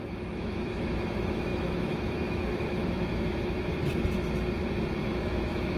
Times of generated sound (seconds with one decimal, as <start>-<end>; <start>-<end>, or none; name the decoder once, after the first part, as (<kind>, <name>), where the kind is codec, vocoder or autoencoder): 0.0-3.7 (autoencoder, DAC-VAE); 5.0-5.8